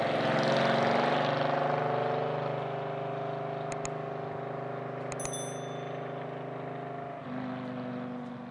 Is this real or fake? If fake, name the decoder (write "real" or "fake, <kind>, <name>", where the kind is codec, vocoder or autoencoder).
real